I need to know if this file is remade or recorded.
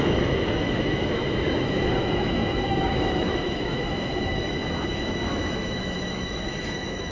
remade